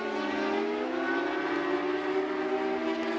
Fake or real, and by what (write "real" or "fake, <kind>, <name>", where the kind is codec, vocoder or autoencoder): real